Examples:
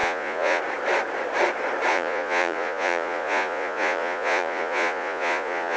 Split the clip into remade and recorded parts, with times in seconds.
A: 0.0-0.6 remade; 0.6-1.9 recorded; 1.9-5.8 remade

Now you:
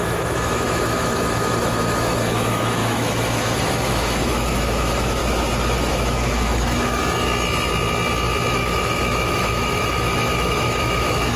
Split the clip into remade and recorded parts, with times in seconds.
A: 0.0-5.2 remade; 5.2-5.9 recorded; 5.9-7.0 remade; 7.0-8.5 recorded; 8.5-11.4 remade

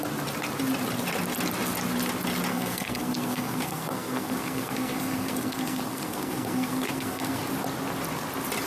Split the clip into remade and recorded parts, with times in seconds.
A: 0.0-2.5 recorded; 2.5-7.4 remade; 7.4-8.7 recorded

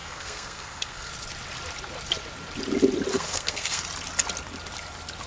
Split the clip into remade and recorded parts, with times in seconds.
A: 0.0-1.1 remade; 1.1-3.1 recorded; 3.1-3.8 remade; 3.8-5.3 recorded

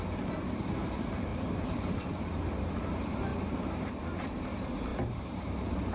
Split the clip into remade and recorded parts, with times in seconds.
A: 0.0-5.9 remade

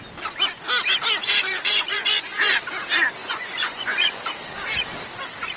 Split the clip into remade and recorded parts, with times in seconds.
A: 0.0-1.2 recorded; 1.2-2.6 remade; 2.6-3.2 recorded; 3.2-4.2 remade; 4.2-5.6 recorded

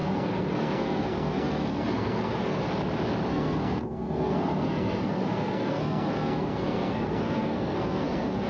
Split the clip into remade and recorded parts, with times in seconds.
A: 0.0-2.6 remade; 2.6-3.3 recorded; 3.3-8.5 remade